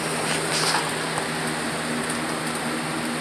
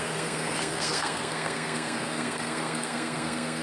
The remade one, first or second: second